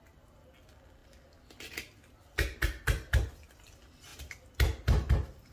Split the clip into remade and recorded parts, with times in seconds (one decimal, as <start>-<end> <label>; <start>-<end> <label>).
0.0-5.5 recorded